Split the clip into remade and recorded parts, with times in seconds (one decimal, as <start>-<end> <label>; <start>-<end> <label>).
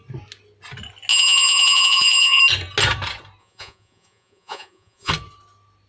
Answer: 0.0-1.1 recorded; 1.1-2.4 remade; 2.4-3.4 recorded; 3.4-5.1 remade; 5.1-5.9 recorded